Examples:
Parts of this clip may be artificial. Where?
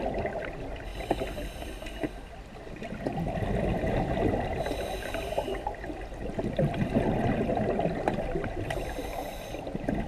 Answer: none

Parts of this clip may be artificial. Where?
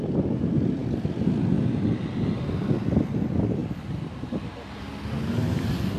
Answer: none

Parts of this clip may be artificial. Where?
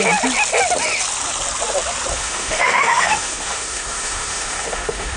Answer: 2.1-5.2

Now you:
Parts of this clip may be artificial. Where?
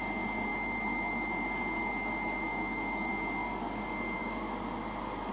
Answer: 0.5-1.3; 1.8-3.1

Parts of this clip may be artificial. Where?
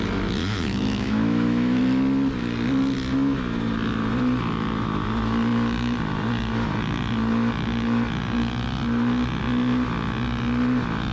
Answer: 0.4-1.8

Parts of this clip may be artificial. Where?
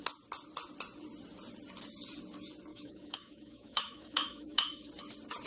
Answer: 2.7-4.9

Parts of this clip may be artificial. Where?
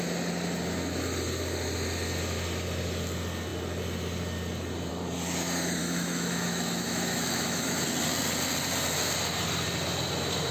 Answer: 5.8-7.8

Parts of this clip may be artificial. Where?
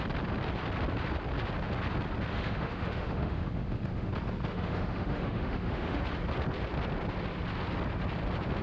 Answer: 2.3-4.1; 4.5-6.0